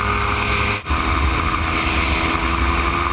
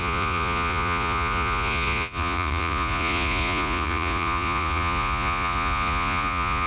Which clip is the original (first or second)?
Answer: first